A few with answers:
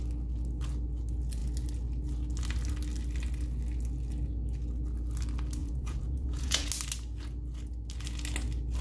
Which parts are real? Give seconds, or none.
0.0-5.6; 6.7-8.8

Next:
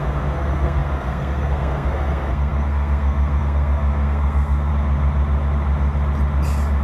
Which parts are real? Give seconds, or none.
4.7-6.8

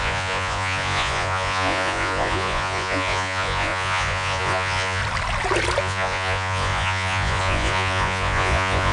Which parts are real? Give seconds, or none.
5.0-5.8

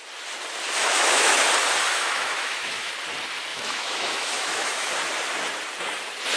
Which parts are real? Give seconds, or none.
0.0-0.8; 1.4-1.9; 2.9-3.5; 4.9-6.4

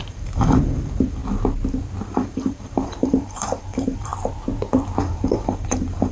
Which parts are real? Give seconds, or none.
1.2-2.1; 4.1-5.0

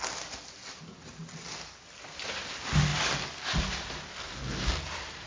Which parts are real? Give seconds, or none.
0.0-5.3

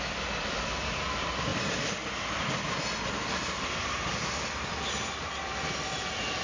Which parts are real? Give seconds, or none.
0.0-6.4